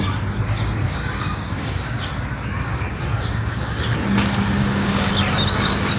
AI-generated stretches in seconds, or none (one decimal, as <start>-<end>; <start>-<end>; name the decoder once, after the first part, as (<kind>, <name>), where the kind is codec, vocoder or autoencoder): 0.8-2.1 (codec, DAC); 2.7-3.8; 4.6-5.1